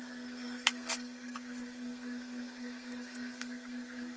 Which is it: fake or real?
fake